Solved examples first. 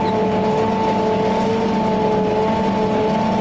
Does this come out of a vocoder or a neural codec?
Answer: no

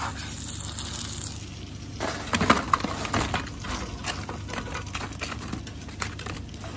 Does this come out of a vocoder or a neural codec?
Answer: no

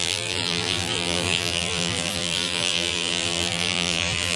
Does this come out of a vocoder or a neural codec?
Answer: yes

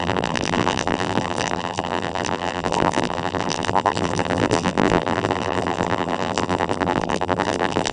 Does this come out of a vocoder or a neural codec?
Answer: yes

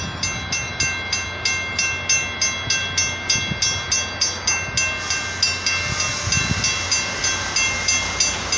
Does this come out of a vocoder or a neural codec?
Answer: no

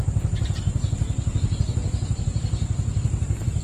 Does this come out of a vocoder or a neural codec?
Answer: no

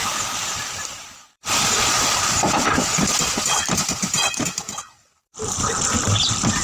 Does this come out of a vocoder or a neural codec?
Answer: yes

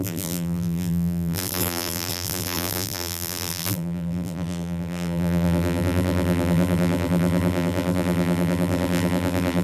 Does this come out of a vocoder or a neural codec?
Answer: yes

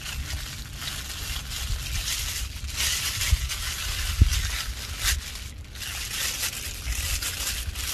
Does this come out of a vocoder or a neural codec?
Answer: no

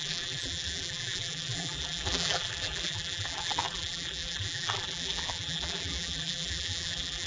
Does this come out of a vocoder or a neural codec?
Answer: yes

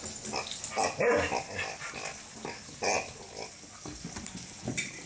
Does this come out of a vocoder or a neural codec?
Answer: no